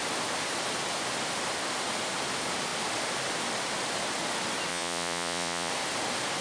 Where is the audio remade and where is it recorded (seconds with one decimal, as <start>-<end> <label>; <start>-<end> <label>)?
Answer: 0.0-4.7 recorded; 4.7-5.7 remade; 5.7-6.4 recorded